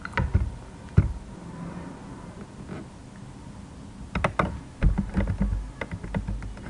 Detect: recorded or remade recorded